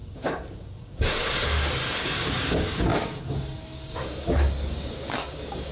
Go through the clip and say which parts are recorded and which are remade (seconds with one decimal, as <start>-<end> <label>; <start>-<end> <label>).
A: 0.0-5.7 remade